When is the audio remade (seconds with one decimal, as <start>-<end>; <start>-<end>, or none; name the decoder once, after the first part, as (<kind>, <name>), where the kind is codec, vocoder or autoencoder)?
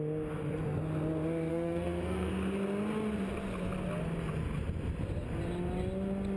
1.5-2.3 (codec, SNAC)